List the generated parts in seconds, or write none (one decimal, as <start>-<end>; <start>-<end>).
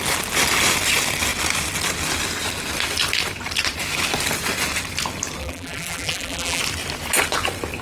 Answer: 5.4-6.6